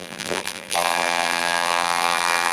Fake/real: fake